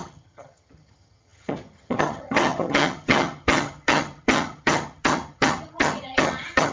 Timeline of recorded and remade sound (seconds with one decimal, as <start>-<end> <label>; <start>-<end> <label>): 0.0-6.7 remade